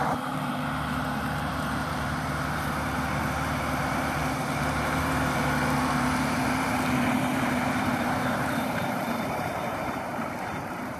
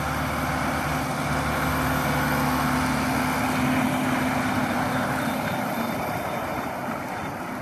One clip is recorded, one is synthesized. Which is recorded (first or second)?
second